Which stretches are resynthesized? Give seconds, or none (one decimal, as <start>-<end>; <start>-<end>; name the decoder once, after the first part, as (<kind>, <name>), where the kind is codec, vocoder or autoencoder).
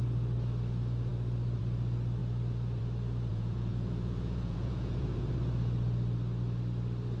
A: 3.3-5.3 (vocoder, Vocos)